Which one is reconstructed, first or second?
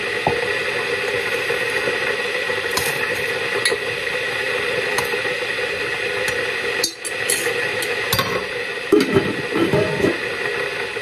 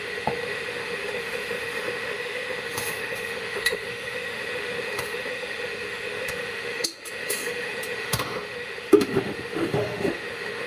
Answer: second